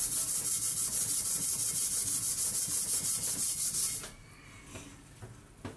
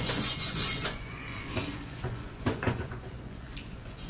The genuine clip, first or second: first